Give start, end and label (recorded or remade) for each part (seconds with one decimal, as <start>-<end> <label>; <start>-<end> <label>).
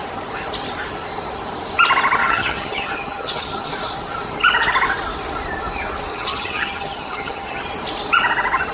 0.0-2.2 recorded; 2.2-3.7 remade; 3.7-6.1 recorded; 6.1-7.6 remade; 7.6-8.7 recorded